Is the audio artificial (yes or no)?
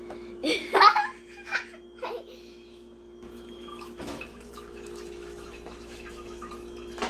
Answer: yes